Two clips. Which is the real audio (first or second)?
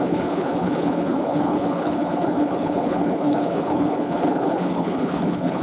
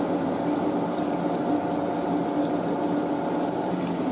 second